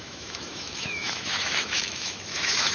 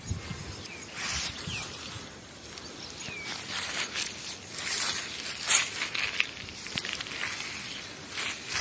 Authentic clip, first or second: second